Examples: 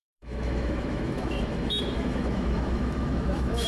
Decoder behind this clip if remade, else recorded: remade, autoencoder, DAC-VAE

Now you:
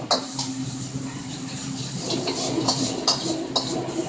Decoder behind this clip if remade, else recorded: remade, vocoder, BigVGAN v2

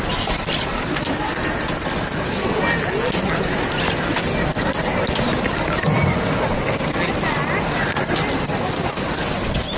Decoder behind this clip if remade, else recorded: recorded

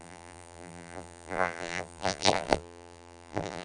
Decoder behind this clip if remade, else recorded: remade, vocoder, BigVGAN v2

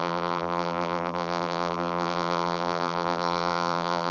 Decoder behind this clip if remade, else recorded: remade, vocoder, BigVGAN v2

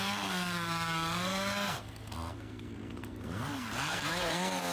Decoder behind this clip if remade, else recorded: remade, codec, SNAC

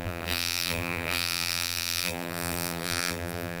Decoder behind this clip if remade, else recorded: remade, vocoder, BigVGAN v2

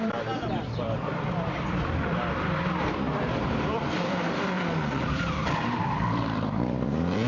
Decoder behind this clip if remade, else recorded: remade, vocoder, BigVGAN v2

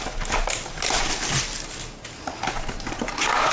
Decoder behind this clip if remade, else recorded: recorded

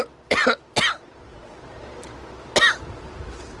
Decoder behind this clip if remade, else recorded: recorded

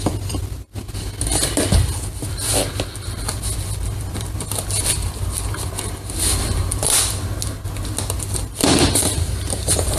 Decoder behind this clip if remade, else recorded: recorded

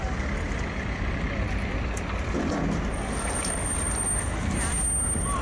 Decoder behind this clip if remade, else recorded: recorded